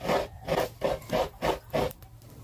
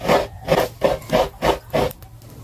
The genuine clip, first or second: second